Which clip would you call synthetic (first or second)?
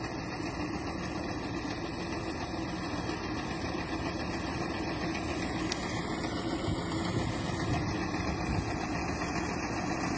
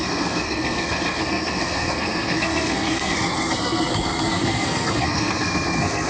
second